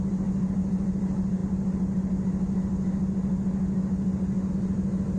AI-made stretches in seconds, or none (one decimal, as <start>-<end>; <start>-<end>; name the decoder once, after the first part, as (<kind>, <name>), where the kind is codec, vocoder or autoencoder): none